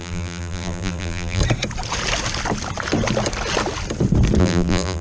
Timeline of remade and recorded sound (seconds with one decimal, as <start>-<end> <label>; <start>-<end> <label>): 0.0-1.4 remade; 1.4-4.4 recorded; 4.4-5.0 remade